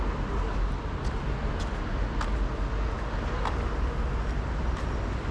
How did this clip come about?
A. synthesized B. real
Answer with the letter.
B